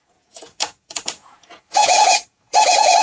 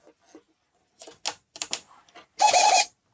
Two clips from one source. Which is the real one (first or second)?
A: second